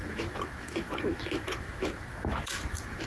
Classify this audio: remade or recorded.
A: remade